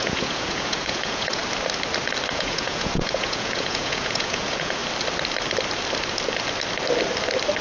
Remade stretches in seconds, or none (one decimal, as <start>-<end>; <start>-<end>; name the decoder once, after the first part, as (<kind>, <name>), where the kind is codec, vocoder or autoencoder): 0.0-1.4 (vocoder, Vocos); 2.3-4.8